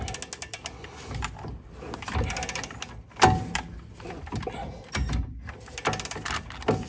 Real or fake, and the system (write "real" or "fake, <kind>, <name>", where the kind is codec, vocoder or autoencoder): real